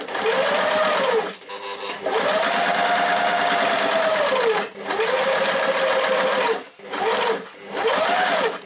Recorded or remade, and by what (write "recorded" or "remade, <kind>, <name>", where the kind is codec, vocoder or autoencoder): recorded